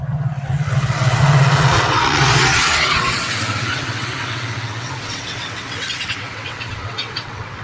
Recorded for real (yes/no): no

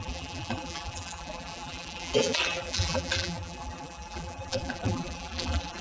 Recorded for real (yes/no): no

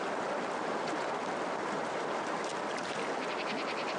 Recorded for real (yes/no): yes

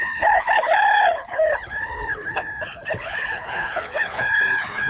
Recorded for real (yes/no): no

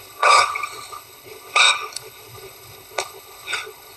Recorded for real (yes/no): no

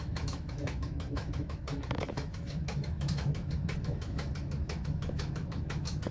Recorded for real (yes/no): no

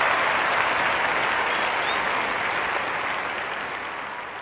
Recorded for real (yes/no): yes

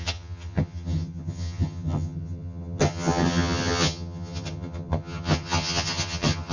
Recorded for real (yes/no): no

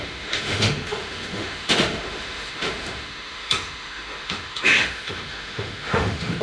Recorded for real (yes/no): no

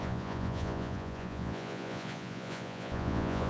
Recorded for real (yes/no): no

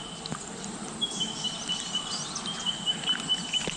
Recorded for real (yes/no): yes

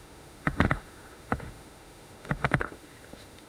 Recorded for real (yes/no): no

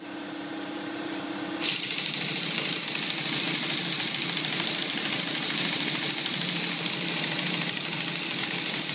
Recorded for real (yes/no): no